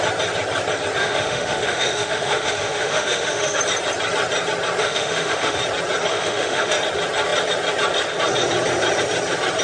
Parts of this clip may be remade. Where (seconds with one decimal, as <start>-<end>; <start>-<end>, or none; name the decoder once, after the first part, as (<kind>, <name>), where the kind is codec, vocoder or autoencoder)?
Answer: 1.0-3.6 (autoencoder, DAC-VAE); 4.8-5.6; 6.1-6.7